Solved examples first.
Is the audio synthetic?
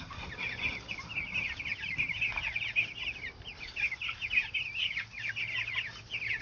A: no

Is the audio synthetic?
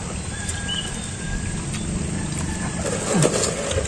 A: no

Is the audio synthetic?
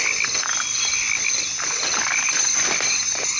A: no